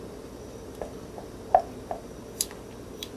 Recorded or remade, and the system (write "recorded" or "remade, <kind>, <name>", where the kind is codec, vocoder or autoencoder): recorded